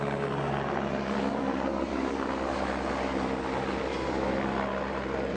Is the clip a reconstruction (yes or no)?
no